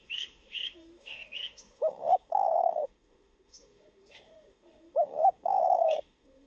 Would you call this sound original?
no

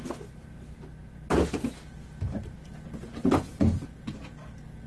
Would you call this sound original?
yes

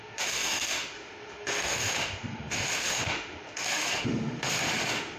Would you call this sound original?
no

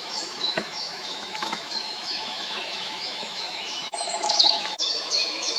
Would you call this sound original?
no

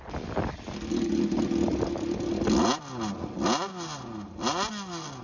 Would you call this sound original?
yes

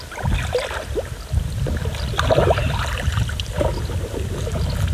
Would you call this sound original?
yes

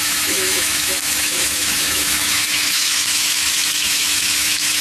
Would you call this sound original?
no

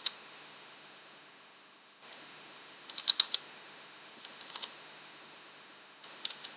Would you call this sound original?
no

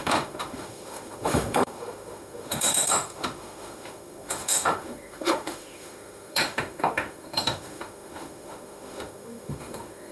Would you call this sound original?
no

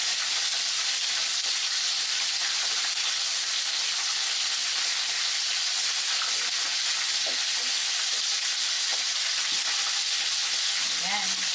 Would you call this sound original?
yes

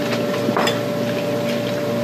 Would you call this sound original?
yes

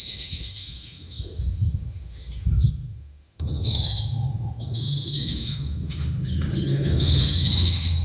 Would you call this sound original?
no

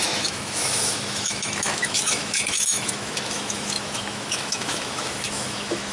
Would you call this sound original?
no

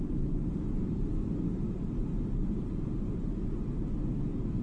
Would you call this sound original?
yes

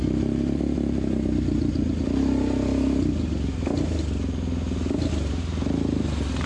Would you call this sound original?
yes